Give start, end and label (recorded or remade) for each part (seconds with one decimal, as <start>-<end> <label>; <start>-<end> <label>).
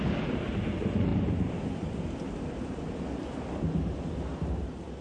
0.0-5.0 recorded